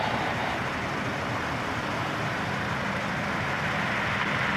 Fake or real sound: real